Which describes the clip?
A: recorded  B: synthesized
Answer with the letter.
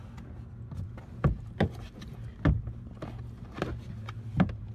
A